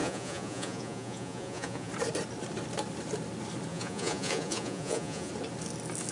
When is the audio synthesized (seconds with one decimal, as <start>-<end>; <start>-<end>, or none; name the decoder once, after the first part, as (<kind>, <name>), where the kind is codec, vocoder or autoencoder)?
0.0-1.9 (vocoder, Vocos); 3.7-5.3